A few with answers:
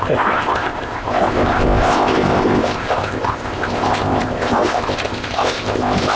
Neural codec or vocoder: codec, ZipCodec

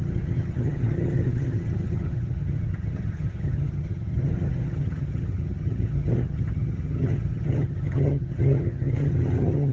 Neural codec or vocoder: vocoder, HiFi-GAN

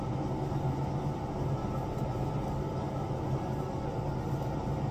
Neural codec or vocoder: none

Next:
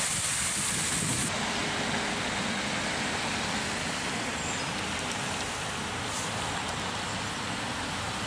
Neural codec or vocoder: none